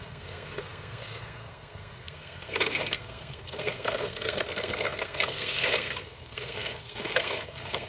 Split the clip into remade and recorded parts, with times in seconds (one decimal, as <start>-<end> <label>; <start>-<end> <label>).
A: 0.0-7.9 remade